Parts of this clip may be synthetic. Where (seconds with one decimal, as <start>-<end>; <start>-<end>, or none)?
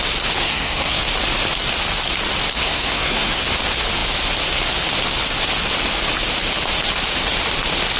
0.4-1.0; 2.6-3.4